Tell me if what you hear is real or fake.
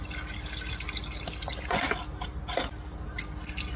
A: real